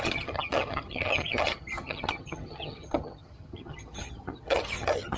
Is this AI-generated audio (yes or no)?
yes